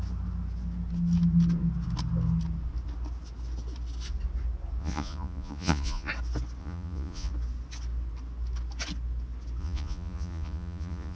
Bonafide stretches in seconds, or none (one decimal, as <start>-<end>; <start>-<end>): 0.0-4.8; 6.1-6.6; 7.3-9.6